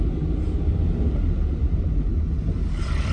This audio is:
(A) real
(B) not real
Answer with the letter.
A